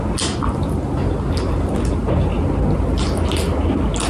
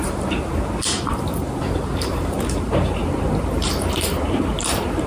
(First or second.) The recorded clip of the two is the first